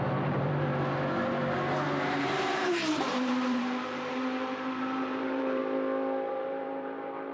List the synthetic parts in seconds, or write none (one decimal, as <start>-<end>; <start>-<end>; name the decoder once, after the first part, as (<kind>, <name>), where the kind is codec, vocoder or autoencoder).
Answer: 0.0-0.7 (vocoder, BigVGAN v2); 2.2-5.6; 6.3-7.3